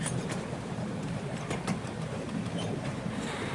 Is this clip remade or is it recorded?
remade